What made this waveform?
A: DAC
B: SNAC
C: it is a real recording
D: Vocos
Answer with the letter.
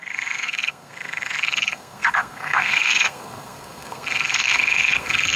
B